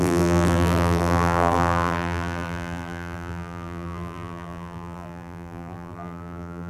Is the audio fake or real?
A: fake